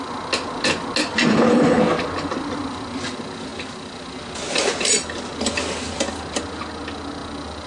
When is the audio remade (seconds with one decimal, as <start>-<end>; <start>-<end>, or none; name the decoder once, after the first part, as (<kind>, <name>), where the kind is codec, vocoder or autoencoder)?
1.3-1.8 (codec, HILCodec)